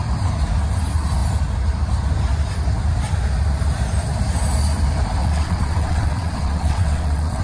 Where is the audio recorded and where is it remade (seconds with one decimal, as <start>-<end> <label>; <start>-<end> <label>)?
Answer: 0.0-5.2 recorded; 5.2-7.4 remade